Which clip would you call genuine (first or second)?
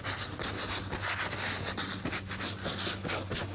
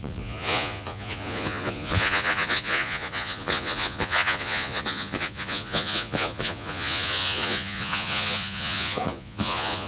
first